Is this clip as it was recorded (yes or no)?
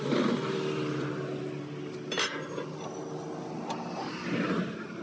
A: yes